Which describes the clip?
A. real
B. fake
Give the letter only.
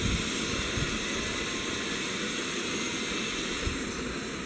A